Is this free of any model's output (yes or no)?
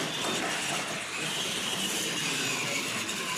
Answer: yes